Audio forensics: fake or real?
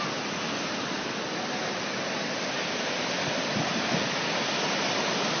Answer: real